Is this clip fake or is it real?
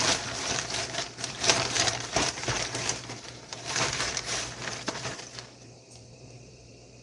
fake